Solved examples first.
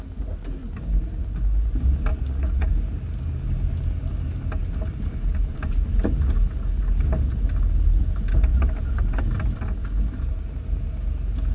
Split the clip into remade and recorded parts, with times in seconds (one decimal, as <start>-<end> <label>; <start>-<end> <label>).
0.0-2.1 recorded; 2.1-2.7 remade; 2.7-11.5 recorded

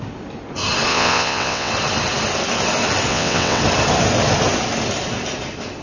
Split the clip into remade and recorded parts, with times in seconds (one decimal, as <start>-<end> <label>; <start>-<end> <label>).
0.0-0.9 recorded; 0.9-1.7 remade; 1.7-3.1 recorded; 3.1-3.6 remade; 3.6-5.8 recorded

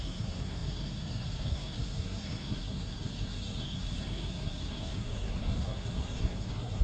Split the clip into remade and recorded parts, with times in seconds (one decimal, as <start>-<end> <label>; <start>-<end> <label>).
0.0-6.8 remade